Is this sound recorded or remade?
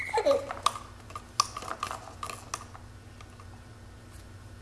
recorded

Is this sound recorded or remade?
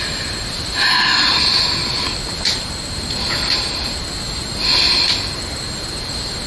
recorded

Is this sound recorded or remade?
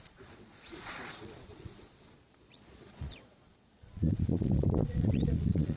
remade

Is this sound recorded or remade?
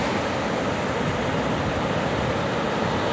recorded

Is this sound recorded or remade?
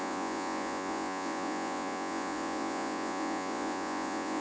remade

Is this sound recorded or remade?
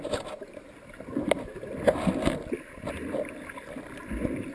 recorded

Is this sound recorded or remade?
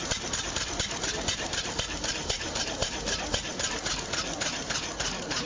remade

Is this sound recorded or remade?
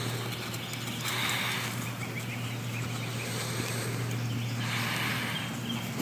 recorded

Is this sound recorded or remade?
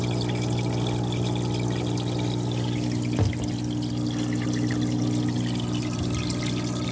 recorded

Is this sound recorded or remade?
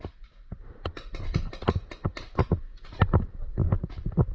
remade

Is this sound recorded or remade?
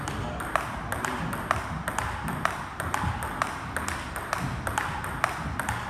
recorded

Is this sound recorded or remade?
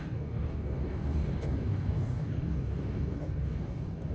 remade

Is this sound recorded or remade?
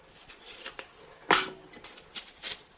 recorded